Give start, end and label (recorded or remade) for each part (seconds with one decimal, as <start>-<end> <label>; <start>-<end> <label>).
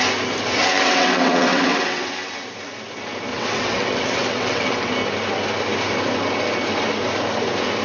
0.0-0.5 recorded; 0.5-2.1 remade; 2.1-3.3 recorded; 3.3-4.9 remade; 4.9-7.8 recorded